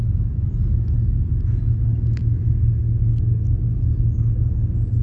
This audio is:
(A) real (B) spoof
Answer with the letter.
A